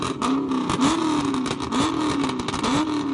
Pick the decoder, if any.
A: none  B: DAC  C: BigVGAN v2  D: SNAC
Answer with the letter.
A